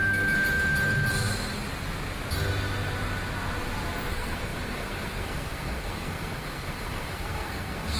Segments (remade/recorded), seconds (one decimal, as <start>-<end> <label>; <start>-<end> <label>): 0.0-4.1 recorded; 4.1-8.0 remade